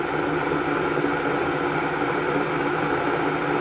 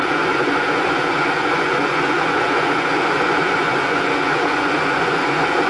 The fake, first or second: second